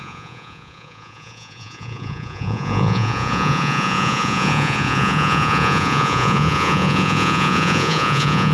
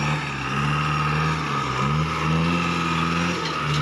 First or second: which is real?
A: second